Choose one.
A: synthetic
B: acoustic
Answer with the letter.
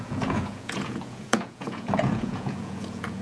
A